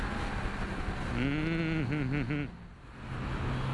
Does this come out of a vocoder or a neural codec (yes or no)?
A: no